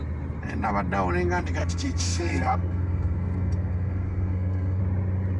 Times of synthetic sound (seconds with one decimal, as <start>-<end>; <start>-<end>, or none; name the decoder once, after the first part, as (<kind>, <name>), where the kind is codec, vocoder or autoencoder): 1.6-4.8 (codec, SNAC)